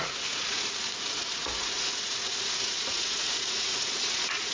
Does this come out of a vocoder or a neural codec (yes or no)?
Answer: yes